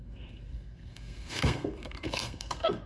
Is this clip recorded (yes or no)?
no